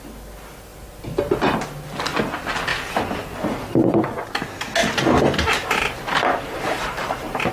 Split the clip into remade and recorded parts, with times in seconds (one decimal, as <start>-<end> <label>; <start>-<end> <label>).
0.0-2.7 recorded; 2.7-4.0 remade; 4.0-4.8 recorded; 4.8-7.5 remade